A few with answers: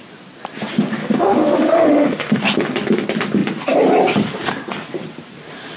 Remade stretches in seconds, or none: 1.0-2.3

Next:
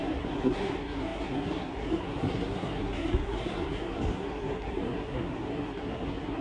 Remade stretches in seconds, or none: 0.0-6.4

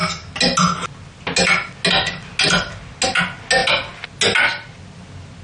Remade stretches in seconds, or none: none

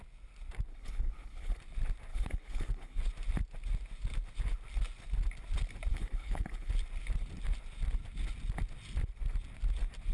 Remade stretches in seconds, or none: 0.7-1.6; 2.1-3.0; 5.9-6.7

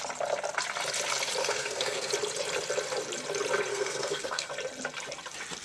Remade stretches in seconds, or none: 1.4-2.1; 3.7-4.5

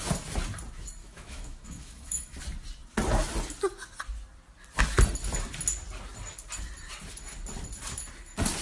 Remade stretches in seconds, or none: 1.0-2.4

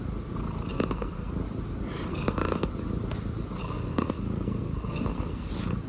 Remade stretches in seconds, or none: 0.7-1.3; 2.1-2.7; 3.6-5.5